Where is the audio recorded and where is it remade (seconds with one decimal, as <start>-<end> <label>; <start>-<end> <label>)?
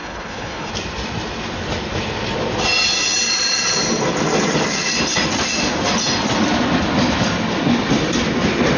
0.0-0.7 remade; 0.7-8.8 recorded